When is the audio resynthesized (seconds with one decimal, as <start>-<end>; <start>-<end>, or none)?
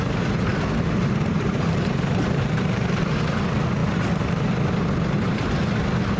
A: 0.5-3.1; 3.8-4.5